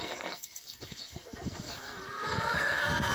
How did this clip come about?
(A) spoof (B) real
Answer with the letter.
A